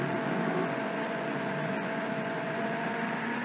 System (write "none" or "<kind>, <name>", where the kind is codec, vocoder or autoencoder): vocoder, Vocos